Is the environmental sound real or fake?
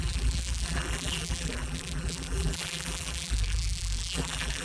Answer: fake